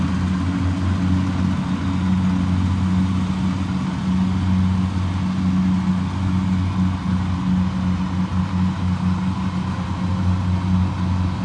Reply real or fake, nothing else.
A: real